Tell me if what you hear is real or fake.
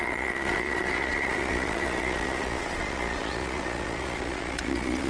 fake